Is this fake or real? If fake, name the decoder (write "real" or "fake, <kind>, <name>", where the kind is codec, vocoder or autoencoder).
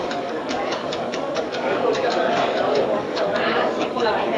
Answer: fake, codec, DAC